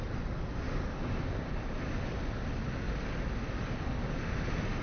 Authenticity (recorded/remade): recorded